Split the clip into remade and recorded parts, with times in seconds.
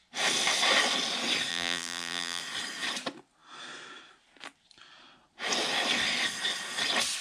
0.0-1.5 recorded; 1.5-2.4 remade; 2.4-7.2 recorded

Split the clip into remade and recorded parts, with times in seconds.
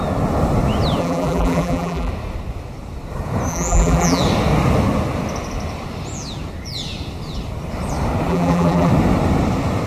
0.0-1.0 recorded; 1.0-2.1 remade; 2.1-3.5 recorded; 3.5-4.2 remade; 4.2-8.3 recorded; 8.3-8.9 remade; 8.9-9.9 recorded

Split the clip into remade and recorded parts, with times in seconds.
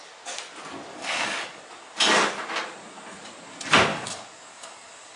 0.0-0.9 recorded; 0.9-1.6 remade; 1.6-3.9 recorded; 3.9-5.2 remade